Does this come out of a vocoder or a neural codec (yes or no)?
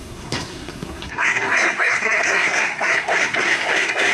yes